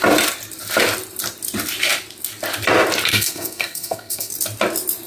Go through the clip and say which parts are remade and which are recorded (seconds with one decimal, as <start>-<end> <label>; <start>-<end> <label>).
0.0-3.1 recorded; 3.1-4.3 remade; 4.3-5.1 recorded